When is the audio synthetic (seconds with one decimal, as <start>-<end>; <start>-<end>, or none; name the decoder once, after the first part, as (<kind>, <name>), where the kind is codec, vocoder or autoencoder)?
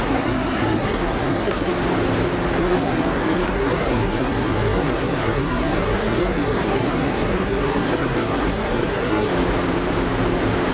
0.0-1.7 (codec, SNAC); 2.6-9.3